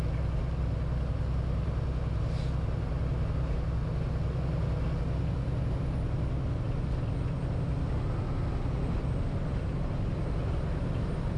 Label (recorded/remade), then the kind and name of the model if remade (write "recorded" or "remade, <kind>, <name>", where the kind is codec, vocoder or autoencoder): recorded